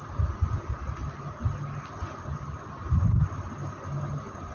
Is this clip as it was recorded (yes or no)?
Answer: yes